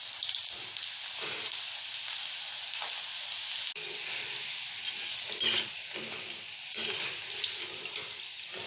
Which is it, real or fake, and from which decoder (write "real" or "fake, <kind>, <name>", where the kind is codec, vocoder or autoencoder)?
real